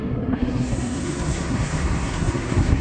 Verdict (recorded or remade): remade